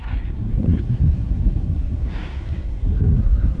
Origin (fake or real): fake